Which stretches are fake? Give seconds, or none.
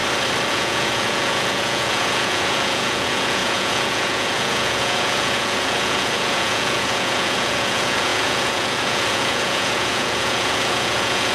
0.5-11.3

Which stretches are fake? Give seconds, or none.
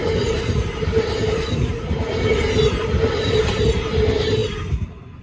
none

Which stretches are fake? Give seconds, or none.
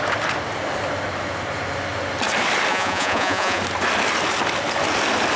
2.7-3.6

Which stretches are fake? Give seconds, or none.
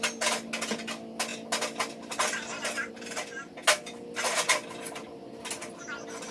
none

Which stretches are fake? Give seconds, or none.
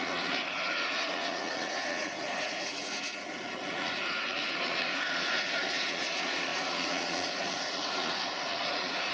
0.0-9.1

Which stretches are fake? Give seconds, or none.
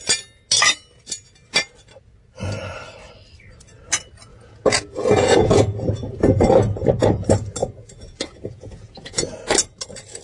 4.3-6.1; 7.6-9.2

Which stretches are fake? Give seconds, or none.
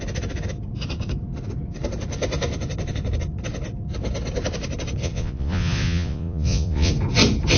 5.0-6.9